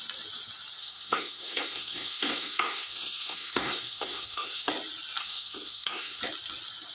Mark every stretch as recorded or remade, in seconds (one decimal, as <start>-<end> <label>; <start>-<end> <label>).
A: 0.0-0.8 recorded; 0.8-4.7 remade; 4.7-5.2 recorded; 5.2-6.2 remade; 6.2-6.9 recorded

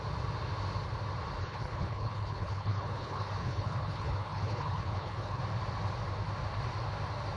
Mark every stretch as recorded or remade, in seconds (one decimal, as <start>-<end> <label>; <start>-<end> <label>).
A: 0.0-1.4 recorded; 1.4-5.4 remade; 5.4-7.4 recorded